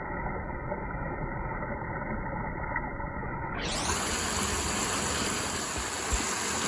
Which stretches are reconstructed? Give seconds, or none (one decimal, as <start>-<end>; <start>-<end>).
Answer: 2.9-4.1